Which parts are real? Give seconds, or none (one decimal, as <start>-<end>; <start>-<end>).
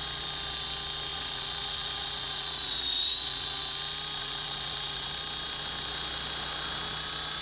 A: 0.0-1.1; 3.6-4.2; 5.1-7.4